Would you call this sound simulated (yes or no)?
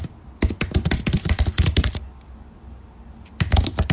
no